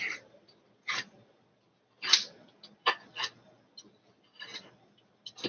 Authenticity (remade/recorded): recorded